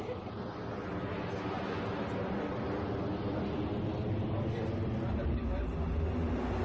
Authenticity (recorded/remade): recorded